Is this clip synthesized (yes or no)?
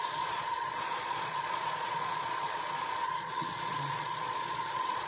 yes